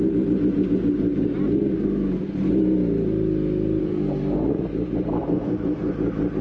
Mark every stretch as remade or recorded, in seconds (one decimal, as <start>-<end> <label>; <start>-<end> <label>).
0.0-3.8 recorded; 3.8-4.4 remade; 4.4-5.2 recorded; 5.2-5.9 remade; 5.9-6.4 recorded